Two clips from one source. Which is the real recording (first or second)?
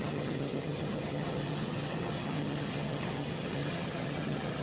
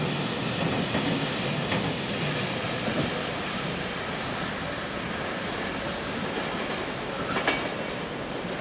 second